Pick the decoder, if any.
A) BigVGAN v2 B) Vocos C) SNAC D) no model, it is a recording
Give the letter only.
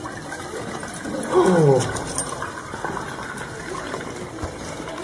D